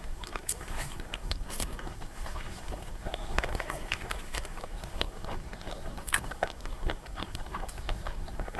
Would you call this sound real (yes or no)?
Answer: no